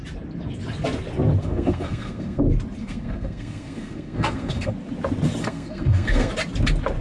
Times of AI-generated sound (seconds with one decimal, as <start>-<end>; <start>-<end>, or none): 1.4-2.4; 2.8-4.7; 5.4-6.3